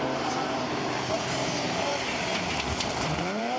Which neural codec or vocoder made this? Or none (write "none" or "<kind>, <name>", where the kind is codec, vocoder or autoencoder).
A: vocoder, BigVGAN v2